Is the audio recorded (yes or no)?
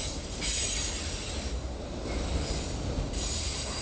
yes